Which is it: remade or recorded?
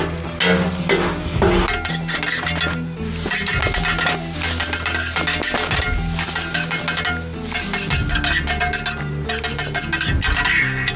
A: recorded